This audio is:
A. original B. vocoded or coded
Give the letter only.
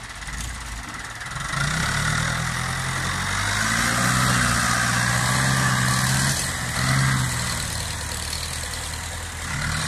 A